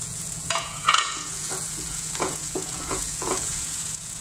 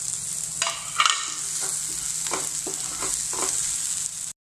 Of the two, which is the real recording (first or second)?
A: second